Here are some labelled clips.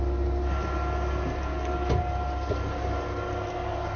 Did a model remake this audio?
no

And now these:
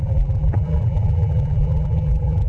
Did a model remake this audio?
yes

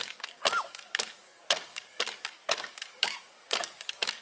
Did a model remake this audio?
yes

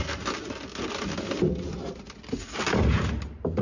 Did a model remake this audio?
no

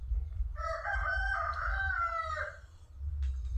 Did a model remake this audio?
yes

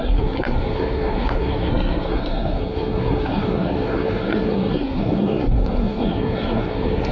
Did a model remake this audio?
yes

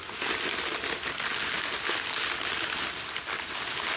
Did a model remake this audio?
no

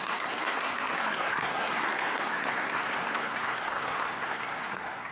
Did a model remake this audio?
yes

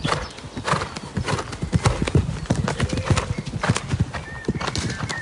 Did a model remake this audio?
no